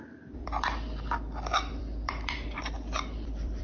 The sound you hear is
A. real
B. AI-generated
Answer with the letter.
B